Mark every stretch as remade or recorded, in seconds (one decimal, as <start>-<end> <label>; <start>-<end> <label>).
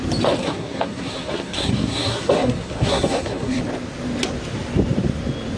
0.0-0.4 recorded; 0.4-3.6 remade; 3.6-5.6 recorded